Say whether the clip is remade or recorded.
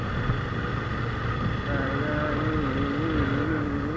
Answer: recorded